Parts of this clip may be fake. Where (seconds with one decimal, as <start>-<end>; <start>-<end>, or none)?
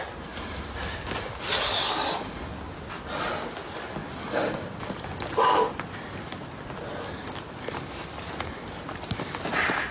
none